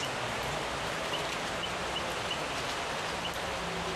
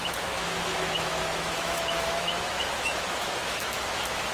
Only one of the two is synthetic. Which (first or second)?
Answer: second